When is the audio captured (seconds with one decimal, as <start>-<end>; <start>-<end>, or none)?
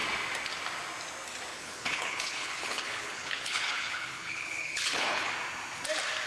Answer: 0.0-1.5; 5.3-6.3